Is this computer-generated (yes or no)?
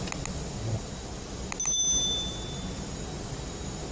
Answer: no